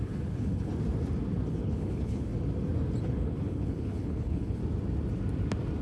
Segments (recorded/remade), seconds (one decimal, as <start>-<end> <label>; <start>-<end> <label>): 0.0-0.7 remade; 0.7-1.5 recorded; 1.5-2.3 remade; 2.3-3.0 recorded; 3.0-4.6 remade; 4.6-5.8 recorded